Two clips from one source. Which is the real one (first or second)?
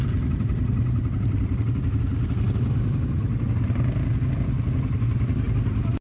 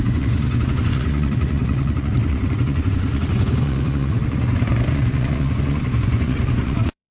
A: first